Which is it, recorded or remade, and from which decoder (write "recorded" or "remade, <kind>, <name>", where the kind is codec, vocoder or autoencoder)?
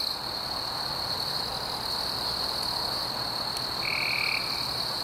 recorded